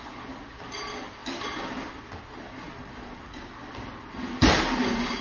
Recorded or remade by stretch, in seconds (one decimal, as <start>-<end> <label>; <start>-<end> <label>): 0.0-5.2 recorded